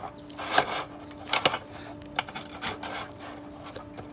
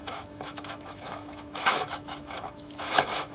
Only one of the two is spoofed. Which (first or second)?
second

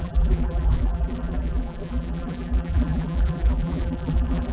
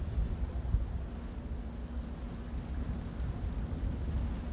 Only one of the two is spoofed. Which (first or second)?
first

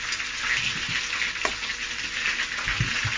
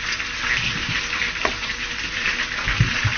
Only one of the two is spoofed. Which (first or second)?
second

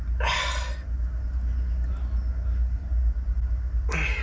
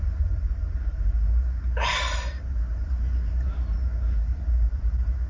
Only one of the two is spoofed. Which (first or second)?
second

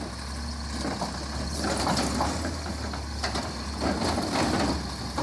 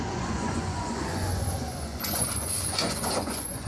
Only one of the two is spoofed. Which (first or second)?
second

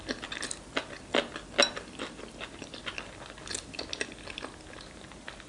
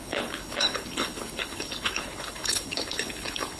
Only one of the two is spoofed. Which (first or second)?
second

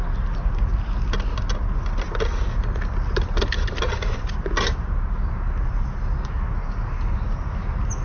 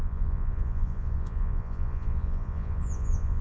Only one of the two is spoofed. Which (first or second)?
second